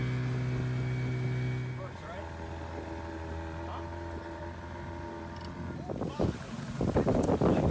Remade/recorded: recorded